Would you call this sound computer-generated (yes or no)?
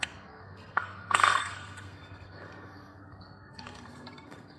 yes